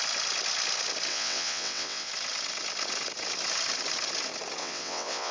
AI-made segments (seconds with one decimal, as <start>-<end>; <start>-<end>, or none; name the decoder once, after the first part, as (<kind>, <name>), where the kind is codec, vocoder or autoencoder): 1.1-2.1 (vocoder, WaveNeXt); 4.6-5.3